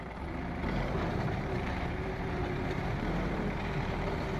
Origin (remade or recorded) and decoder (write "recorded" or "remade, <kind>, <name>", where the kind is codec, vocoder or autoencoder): remade, vocoder, BigVGAN v2